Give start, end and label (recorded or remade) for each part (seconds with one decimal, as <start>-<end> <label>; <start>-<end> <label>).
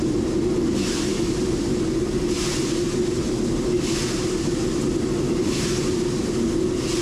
0.0-7.0 recorded